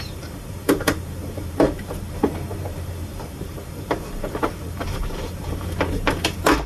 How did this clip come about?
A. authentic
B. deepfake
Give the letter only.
B